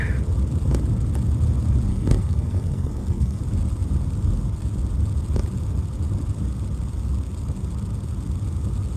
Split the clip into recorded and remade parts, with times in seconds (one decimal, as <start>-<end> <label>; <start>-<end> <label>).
0.0-1.9 recorded; 1.9-3.4 remade; 3.4-9.0 recorded